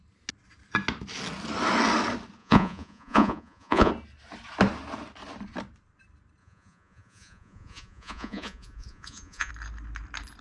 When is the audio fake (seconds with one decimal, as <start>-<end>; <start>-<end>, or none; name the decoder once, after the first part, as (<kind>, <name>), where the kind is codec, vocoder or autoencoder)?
2.4-3.9 (vocoder, Vocos); 6.4-9.5